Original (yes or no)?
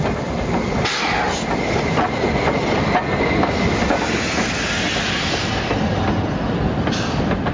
yes